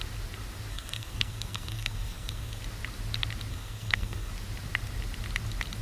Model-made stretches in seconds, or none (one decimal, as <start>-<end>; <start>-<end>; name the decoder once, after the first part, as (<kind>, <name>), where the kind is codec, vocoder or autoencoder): 0.7-2.6 (codec, SNAC); 3.5-4.3